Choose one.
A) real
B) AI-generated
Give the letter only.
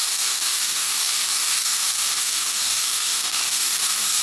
B